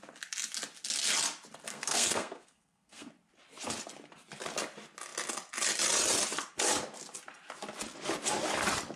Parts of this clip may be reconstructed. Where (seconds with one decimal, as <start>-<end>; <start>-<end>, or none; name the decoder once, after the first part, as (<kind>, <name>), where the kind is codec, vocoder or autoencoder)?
1.7-3.1 (codec, SNAC)